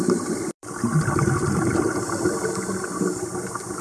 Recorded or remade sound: remade